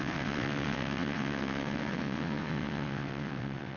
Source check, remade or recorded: remade